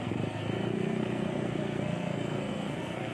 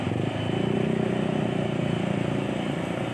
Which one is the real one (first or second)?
second